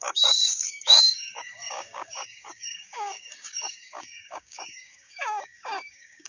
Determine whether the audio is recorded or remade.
remade